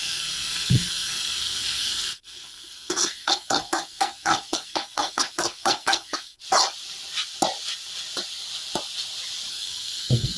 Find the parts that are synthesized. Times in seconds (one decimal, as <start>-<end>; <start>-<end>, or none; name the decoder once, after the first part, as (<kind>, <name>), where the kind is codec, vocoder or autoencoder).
0.0-6.4 (codec, SNAC); 9.5-10.4